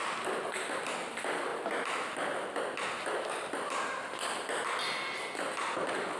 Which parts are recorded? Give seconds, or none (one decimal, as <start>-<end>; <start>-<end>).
0.0-6.2